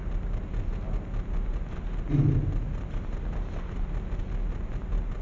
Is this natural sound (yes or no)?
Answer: yes